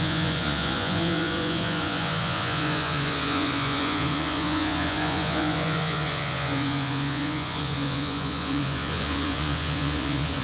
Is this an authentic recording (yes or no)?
no